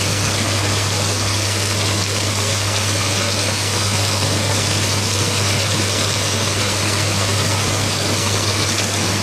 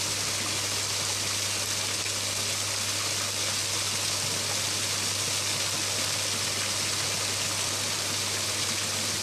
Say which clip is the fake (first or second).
first